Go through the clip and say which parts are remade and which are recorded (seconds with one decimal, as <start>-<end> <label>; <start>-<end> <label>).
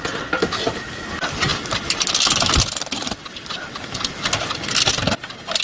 0.0-5.6 recorded